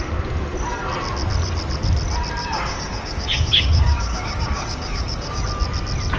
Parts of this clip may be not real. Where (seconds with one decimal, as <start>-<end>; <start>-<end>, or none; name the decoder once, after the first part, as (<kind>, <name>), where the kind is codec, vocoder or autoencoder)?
2.4-5.4 (codec, DAC)